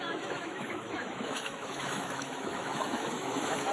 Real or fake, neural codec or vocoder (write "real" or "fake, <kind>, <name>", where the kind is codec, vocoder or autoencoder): fake, autoencoder, DAC-VAE